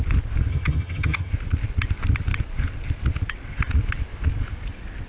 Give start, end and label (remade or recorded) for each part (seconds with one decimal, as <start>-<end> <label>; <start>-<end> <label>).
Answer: 0.0-0.5 recorded; 0.5-1.3 remade; 1.3-5.1 recorded